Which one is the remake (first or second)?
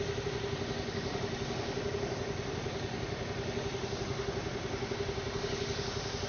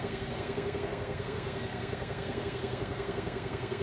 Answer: second